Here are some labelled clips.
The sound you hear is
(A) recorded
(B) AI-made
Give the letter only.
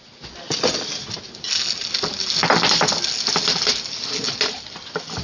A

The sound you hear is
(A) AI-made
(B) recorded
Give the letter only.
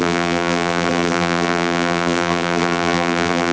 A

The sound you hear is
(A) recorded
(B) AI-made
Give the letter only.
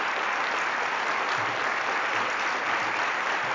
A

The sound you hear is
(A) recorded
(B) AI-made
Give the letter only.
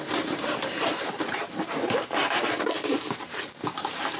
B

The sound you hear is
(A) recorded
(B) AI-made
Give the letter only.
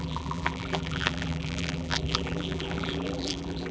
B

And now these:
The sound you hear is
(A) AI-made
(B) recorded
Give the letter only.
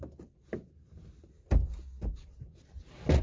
B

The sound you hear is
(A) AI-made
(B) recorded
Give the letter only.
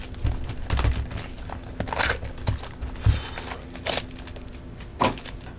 B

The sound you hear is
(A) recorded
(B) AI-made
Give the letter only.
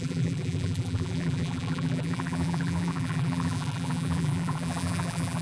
B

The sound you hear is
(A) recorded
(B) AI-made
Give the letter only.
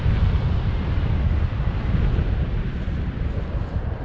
A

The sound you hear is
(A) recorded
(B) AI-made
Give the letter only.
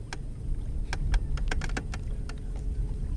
A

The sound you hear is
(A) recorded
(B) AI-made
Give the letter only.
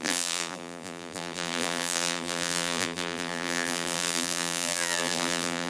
B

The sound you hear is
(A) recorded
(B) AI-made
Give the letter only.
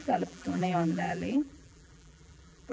B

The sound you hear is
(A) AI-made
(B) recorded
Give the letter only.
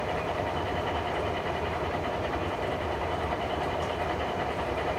A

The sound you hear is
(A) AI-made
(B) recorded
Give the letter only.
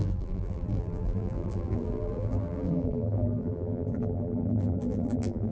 A